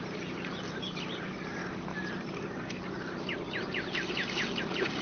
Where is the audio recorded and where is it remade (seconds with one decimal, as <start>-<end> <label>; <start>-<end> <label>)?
0.0-1.6 remade; 1.6-4.6 recorded; 4.6-5.0 remade